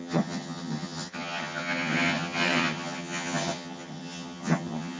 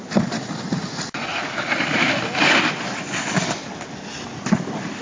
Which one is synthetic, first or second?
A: first